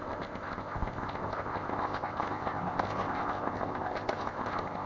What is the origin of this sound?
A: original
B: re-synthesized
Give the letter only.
B